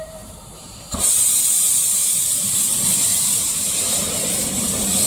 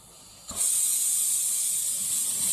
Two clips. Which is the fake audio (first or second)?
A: first